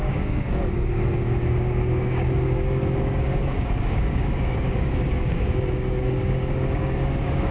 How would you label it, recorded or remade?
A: remade